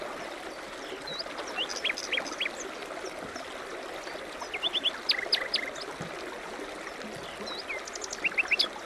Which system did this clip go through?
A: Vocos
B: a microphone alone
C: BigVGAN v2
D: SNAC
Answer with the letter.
B